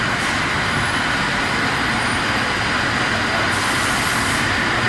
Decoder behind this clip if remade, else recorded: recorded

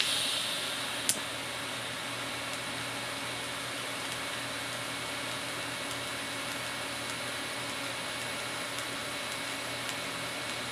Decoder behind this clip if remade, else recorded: recorded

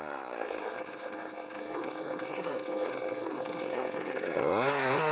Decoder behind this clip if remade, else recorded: remade, codec, SNAC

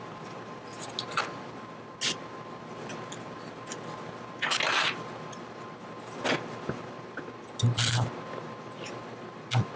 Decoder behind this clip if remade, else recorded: recorded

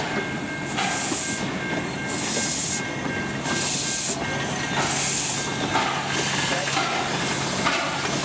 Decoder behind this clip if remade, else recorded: recorded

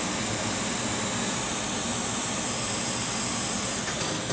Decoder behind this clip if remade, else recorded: recorded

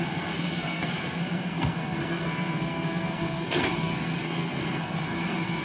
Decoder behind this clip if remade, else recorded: remade, codec, SNAC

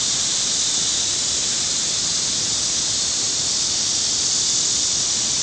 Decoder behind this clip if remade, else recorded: recorded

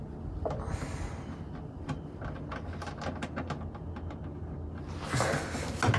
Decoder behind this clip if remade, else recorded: recorded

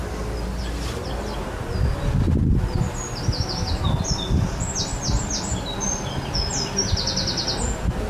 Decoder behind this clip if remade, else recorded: recorded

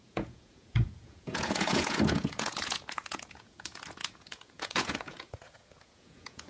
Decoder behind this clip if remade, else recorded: remade, vocoder, Vocos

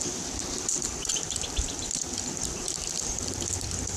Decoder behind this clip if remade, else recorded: remade, vocoder, BigVGAN v2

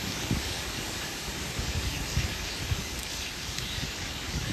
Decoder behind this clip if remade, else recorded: remade, codec, DAC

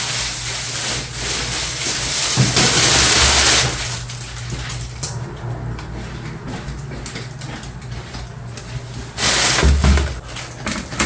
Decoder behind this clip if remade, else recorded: recorded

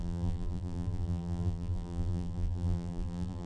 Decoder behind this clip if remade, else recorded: remade, vocoder, BigVGAN v2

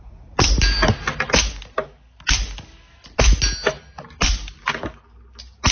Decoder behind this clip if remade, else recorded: recorded